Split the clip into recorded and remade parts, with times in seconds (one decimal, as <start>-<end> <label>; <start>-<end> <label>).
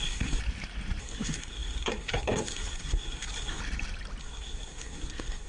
0.0-0.4 remade; 0.4-1.0 recorded; 1.0-3.6 remade; 3.6-4.2 recorded; 4.2-5.5 remade